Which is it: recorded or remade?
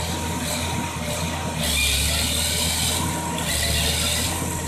recorded